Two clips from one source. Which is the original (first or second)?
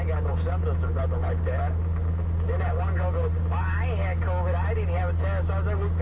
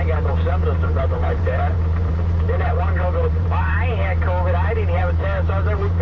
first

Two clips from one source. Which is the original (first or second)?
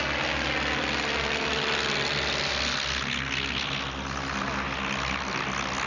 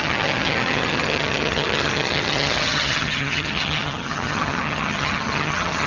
first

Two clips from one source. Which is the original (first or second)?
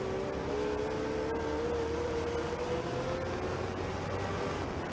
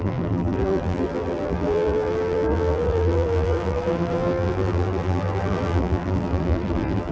first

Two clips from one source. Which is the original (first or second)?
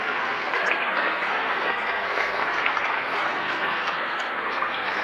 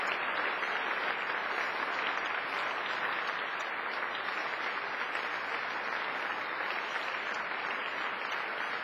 second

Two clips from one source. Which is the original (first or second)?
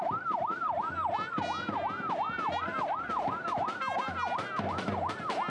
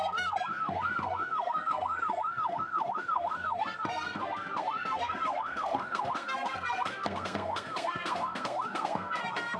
first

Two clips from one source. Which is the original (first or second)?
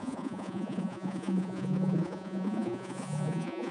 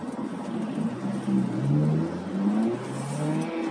second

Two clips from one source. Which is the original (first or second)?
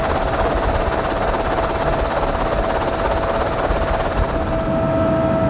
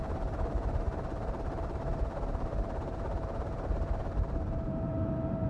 first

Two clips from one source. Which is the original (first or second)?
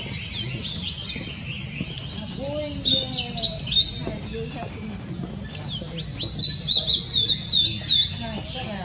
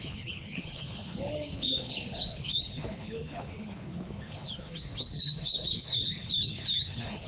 first